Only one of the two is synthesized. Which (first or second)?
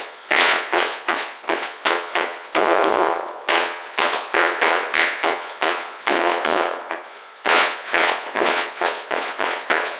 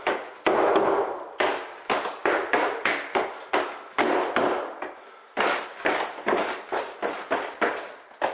first